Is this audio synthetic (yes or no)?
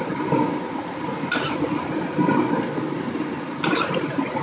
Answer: no